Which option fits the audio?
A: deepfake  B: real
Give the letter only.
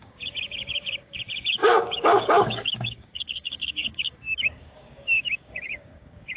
A